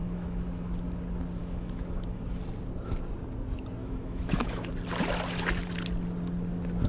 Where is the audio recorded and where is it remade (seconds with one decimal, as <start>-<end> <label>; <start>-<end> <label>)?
0.0-0.7 remade; 0.7-1.4 recorded; 1.4-2.4 remade; 2.4-3.8 recorded; 3.8-4.7 remade; 4.7-6.9 recorded